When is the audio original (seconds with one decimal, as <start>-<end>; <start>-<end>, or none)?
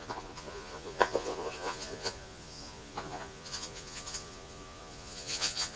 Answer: none